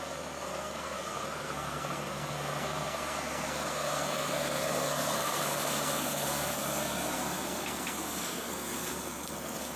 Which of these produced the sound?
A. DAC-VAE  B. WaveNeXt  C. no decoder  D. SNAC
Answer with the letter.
D